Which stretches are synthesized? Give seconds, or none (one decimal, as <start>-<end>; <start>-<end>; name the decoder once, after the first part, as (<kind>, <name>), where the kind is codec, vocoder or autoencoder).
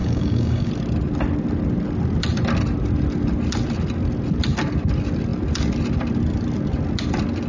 0.0-0.7 (codec, DAC)